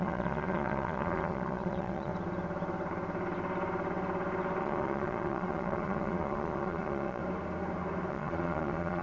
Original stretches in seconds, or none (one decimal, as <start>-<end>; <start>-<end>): 2.1-4.6; 7.2-8.1